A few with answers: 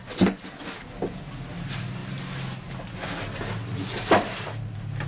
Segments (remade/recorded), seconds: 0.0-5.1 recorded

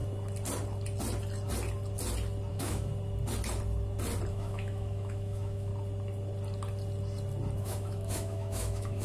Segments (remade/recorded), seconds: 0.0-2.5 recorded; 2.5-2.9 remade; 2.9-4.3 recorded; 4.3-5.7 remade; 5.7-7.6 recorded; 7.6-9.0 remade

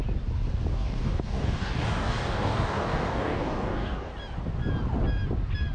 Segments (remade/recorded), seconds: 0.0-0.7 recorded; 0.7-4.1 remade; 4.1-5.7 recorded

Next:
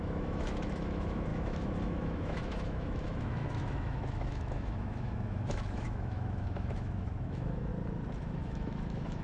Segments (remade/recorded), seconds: 0.0-7.7 remade; 7.7-8.2 recorded; 8.2-9.2 remade